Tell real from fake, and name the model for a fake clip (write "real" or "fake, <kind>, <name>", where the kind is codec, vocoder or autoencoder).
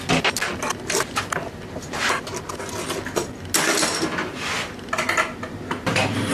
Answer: real